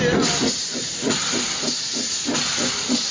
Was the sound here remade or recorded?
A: recorded